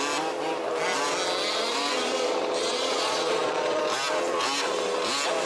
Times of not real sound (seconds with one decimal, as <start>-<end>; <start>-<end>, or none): 2.8-3.8